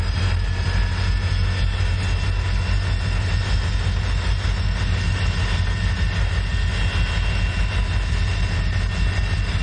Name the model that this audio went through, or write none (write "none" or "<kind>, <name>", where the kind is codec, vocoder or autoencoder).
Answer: none